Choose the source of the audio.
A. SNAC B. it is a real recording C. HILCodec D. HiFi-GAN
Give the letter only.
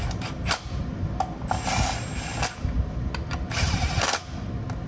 B